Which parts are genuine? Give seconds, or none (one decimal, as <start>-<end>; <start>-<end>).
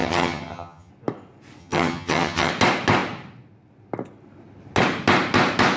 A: 0.9-1.6; 2.5-5.8